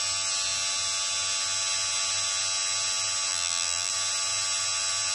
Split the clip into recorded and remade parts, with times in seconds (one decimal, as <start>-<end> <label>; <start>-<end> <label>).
0.0-3.3 recorded; 3.3-3.9 remade; 3.9-5.1 recorded